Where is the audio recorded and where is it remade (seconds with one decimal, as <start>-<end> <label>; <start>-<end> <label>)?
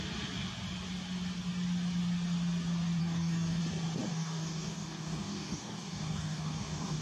0.0-3.0 recorded; 3.0-3.6 remade; 3.6-4.1 recorded; 4.1-7.0 remade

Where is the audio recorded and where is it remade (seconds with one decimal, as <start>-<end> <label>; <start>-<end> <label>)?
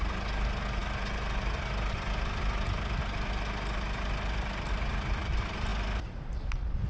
0.0-6.9 recorded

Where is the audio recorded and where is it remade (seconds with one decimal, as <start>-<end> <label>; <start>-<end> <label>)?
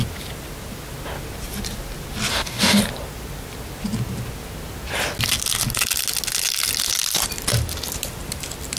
0.0-2.3 recorded; 2.3-2.8 remade; 2.8-8.8 recorded